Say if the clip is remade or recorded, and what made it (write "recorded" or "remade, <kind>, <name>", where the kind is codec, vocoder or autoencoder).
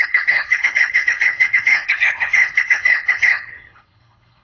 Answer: remade, codec, HILCodec